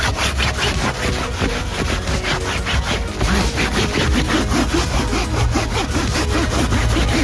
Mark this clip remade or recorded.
recorded